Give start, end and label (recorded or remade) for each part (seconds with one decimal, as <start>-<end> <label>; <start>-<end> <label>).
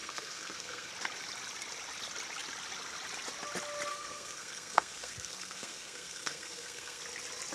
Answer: 0.0-0.9 remade; 0.9-3.9 recorded; 3.9-7.0 remade; 7.0-7.5 recorded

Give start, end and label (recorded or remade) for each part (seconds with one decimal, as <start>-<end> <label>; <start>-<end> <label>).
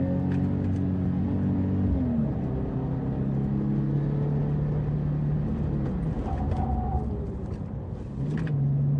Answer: 0.0-9.0 recorded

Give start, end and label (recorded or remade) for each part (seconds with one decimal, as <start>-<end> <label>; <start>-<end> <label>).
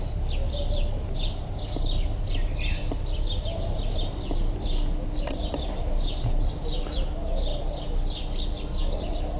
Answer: 0.0-9.4 recorded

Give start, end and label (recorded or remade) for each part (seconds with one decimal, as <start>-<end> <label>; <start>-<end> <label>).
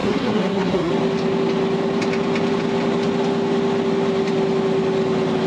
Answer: 0.0-0.9 remade; 0.9-5.5 recorded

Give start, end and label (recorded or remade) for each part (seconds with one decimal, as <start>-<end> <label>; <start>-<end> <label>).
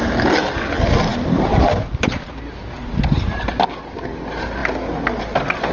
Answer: 0.0-5.7 recorded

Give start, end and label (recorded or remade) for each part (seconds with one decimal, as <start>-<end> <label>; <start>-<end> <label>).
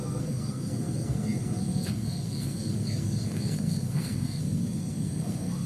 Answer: 0.0-5.7 remade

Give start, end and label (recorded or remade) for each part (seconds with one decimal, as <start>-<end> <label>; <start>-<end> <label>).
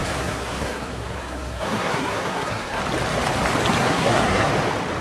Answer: 0.0-2.8 remade; 2.8-3.8 recorded; 3.8-4.5 remade; 4.5-5.0 recorded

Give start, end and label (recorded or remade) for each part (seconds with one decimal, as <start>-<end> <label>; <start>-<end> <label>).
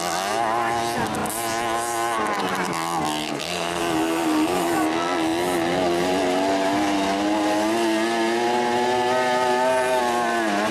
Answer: 0.0-3.2 recorded; 3.2-3.8 remade; 3.8-10.7 recorded